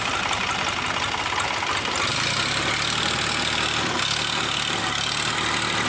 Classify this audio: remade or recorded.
recorded